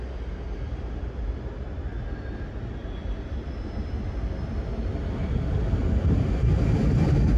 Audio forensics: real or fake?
real